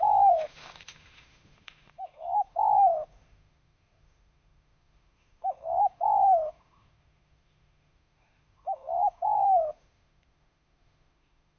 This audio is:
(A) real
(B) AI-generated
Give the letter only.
B